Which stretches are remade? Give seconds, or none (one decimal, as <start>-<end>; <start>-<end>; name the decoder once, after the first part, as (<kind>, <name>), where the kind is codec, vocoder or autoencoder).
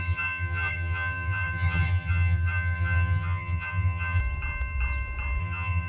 0.0-4.2 (vocoder, HiFi-GAN); 5.4-5.9